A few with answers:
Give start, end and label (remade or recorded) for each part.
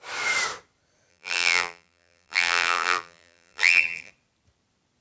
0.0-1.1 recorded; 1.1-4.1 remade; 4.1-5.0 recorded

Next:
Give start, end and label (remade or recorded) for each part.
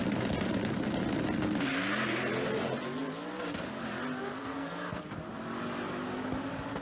0.0-4.4 recorded; 4.4-5.0 remade; 5.0-6.8 recorded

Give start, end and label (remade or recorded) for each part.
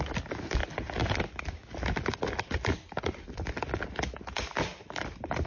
0.0-5.5 recorded